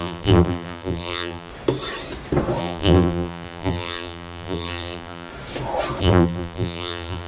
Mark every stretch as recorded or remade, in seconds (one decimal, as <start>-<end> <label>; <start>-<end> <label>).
0.0-1.5 remade; 1.5-2.6 recorded; 2.6-5.3 remade; 5.3-6.0 recorded; 6.0-7.3 remade